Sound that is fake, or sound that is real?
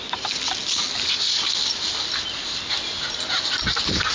real